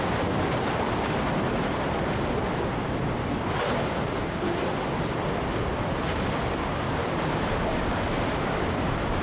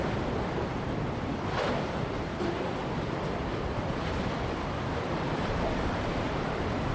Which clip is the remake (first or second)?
second